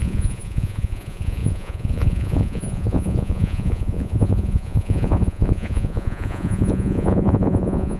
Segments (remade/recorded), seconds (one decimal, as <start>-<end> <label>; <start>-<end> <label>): 0.0-8.0 remade